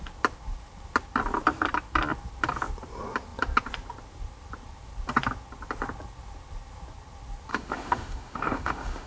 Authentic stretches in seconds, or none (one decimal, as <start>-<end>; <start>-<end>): 0.0-7.5